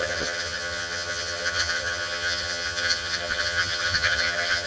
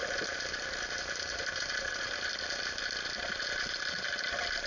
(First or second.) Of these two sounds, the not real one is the first